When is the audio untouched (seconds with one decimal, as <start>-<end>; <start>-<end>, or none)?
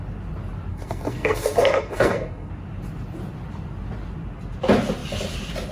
0.0-0.7; 2.5-5.7